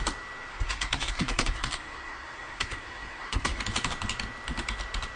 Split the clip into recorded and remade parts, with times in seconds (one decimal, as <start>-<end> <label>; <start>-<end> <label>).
0.0-0.5 recorded; 0.5-3.6 remade; 3.6-5.2 recorded